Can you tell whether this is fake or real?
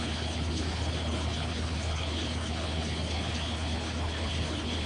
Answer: fake